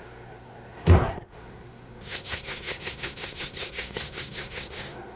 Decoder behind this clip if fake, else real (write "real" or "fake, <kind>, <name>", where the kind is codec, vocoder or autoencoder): fake, codec, SNAC